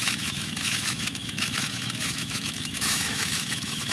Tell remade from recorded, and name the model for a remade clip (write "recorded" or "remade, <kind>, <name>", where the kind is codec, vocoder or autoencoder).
remade, autoencoder, DAC-VAE